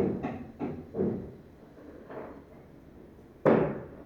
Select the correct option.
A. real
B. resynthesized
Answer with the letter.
A